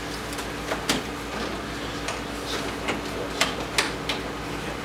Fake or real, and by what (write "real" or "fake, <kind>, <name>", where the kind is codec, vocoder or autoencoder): real